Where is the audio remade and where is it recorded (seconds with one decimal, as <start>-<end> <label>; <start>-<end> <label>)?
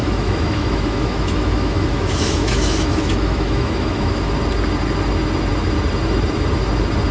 0.0-4.3 remade; 4.3-7.1 recorded